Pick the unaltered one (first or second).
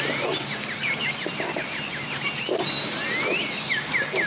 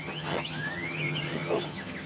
first